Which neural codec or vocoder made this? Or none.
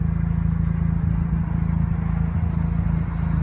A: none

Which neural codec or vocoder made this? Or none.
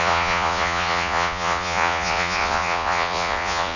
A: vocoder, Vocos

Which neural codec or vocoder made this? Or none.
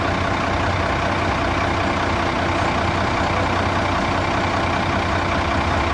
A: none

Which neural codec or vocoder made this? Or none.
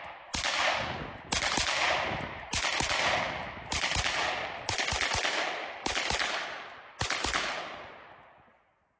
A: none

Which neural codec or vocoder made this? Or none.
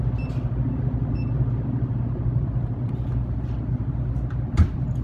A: none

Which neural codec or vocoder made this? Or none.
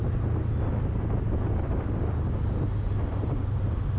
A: none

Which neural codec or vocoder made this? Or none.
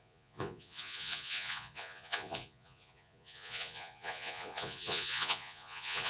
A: vocoder, Vocos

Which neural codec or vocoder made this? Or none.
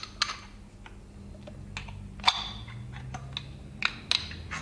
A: none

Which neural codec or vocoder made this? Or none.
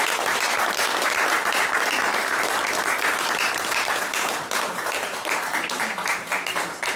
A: vocoder, BigVGAN v2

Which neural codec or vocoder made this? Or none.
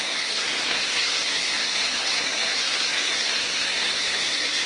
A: codec, SNAC